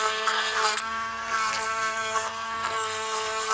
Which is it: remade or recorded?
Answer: remade